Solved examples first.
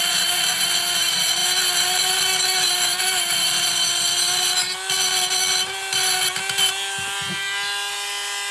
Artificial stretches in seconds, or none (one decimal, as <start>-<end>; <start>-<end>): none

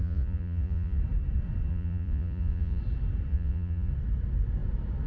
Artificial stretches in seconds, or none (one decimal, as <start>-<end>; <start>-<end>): 0.0-1.0; 1.7-2.8; 3.3-3.9

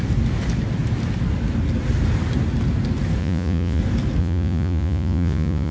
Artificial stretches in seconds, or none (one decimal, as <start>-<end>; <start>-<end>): 3.2-3.8; 4.2-5.7